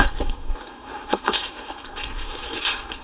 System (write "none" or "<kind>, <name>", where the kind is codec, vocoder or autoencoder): codec, SNAC